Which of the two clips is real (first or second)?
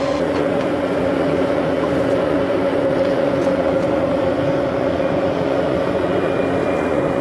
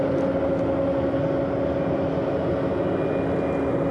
second